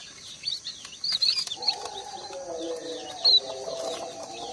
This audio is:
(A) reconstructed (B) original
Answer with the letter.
B